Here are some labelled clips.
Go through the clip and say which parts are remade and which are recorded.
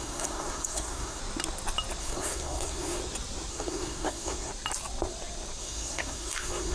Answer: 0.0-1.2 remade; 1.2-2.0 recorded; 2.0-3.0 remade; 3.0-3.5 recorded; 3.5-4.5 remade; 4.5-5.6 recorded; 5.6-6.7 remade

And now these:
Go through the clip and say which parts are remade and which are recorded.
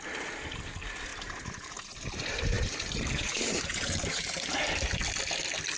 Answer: 0.0-1.1 recorded; 1.1-4.6 remade; 4.6-5.8 recorded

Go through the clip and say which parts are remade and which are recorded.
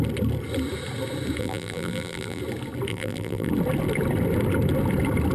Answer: 0.0-1.4 recorded; 1.4-2.4 remade; 2.4-2.9 recorded; 2.9-3.5 remade; 3.5-5.3 recorded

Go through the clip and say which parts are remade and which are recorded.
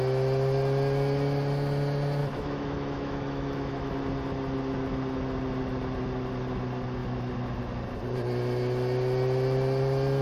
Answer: 0.0-2.2 recorded; 2.2-3.9 remade; 3.9-10.2 recorded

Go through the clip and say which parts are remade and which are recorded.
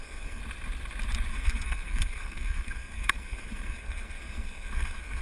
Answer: 0.0-0.4 remade; 0.4-1.3 recorded; 1.3-5.2 remade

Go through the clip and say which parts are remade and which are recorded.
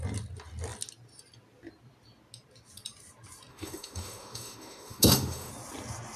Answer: 0.0-3.5 recorded; 3.5-5.5 remade; 5.5-6.2 recorded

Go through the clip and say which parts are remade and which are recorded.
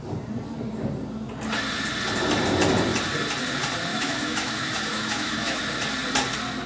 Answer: 0.0-3.9 recorded; 3.9-5.6 remade; 5.6-6.7 recorded